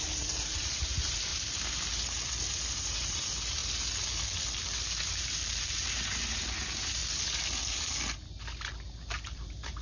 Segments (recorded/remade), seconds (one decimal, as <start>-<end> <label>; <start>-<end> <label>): 0.0-1.3 remade; 1.3-2.7 recorded; 2.7-3.6 remade; 3.6-5.1 recorded; 5.1-7.0 remade; 7.0-9.1 recorded; 9.1-9.8 remade